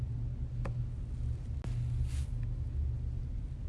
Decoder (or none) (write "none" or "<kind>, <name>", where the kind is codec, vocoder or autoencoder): none